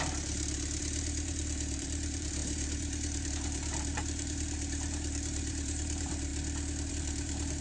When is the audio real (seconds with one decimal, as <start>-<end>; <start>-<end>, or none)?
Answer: 6.3-6.9